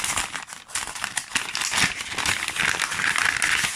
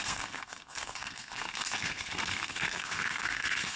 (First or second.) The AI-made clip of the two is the second